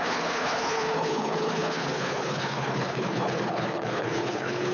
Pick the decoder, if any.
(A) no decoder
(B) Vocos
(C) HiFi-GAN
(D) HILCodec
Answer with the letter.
D